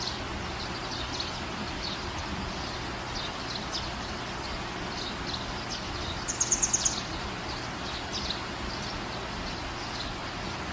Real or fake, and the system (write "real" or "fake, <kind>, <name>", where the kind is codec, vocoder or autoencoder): real